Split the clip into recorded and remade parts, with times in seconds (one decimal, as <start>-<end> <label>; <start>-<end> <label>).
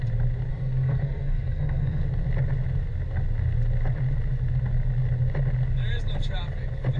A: 0.0-0.5 recorded; 0.5-2.0 remade; 2.0-7.0 recorded